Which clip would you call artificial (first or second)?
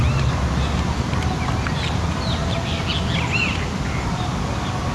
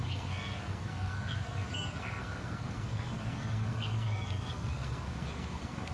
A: second